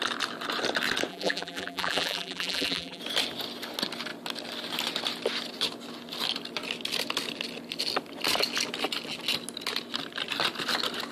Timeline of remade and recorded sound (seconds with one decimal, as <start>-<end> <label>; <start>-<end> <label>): 0.0-1.1 recorded; 1.1-3.0 remade; 3.0-11.1 recorded